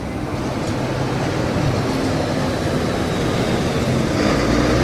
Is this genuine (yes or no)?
yes